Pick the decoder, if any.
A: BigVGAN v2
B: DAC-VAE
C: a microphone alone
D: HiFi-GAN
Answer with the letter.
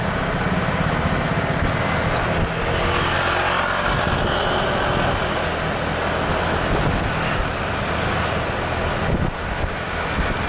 C